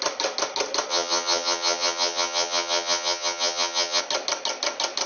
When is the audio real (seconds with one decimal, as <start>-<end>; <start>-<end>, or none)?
0.0-0.9; 4.0-5.1